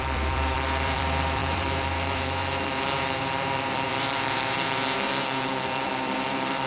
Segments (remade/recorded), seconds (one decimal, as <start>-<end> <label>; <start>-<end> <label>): 0.0-6.7 remade